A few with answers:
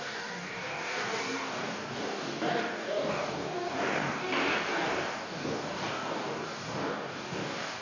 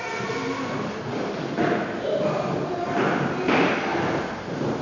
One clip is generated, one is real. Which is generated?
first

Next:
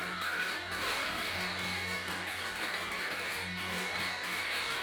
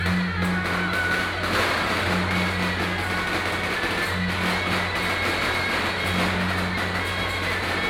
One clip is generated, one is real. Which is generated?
first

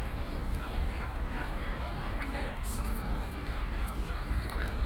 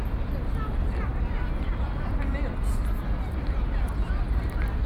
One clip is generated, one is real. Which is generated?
first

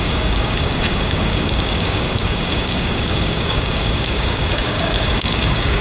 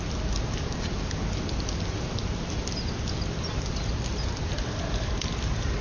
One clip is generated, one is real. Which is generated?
first